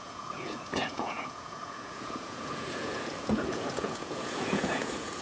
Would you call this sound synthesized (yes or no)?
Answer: yes